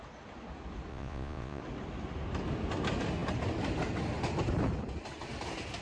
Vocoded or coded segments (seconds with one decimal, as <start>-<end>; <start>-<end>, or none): 0.9-1.6